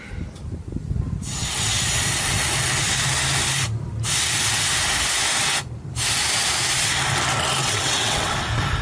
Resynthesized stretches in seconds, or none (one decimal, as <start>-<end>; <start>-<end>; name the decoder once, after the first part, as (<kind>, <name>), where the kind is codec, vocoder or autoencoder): 7.6-8.3 (vocoder, WaveNeXt)